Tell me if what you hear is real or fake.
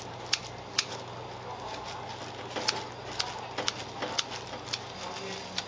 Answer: real